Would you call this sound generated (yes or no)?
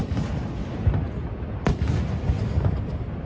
no